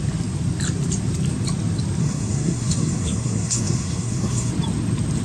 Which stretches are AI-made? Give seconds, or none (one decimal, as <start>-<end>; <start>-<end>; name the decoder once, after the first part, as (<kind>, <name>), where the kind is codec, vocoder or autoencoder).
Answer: 2.0-4.5 (codec, SNAC)